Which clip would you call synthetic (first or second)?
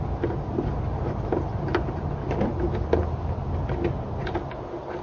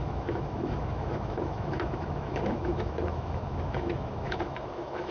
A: second